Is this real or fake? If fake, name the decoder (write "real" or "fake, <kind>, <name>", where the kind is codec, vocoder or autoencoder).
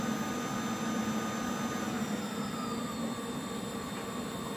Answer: real